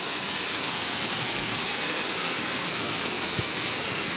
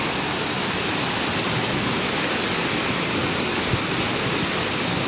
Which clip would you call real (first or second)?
second